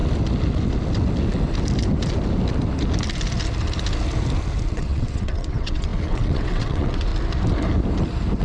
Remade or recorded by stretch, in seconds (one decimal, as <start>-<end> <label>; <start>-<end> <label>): 0.0-4.7 recorded; 4.7-7.1 remade; 7.1-8.4 recorded